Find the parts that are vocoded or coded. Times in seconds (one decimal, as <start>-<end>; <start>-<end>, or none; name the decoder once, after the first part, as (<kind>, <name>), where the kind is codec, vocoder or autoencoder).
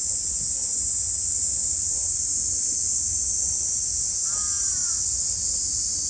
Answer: 4.8-6.1 (vocoder, Vocos)